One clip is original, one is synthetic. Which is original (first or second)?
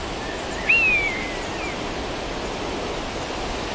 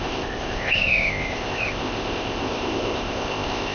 first